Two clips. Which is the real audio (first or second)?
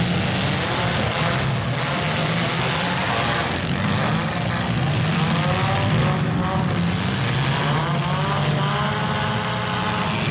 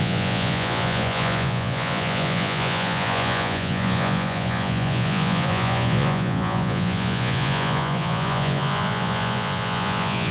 first